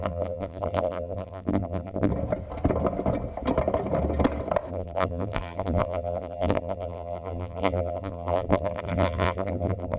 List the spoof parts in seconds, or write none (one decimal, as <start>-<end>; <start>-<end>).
0.0-2.1; 4.7-10.0